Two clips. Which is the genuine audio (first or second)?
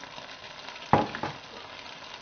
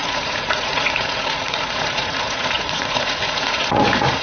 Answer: first